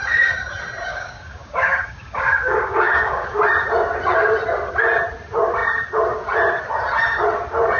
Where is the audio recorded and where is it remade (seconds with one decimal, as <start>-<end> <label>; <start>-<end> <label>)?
0.0-0.9 recorded; 0.9-3.4 remade; 3.4-7.8 recorded